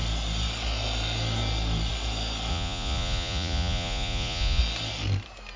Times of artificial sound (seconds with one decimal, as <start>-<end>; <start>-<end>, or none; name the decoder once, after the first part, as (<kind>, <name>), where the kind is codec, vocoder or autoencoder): 2.5-4.6 (vocoder, Vocos)